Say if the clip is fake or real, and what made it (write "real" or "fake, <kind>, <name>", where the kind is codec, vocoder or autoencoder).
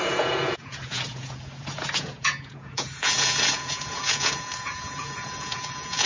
fake, vocoder, Vocos